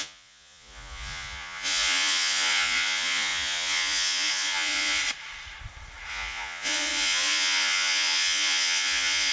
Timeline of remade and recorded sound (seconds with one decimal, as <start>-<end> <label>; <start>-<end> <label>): 0.0-5.0 remade; 5.0-6.1 recorded; 6.1-9.3 remade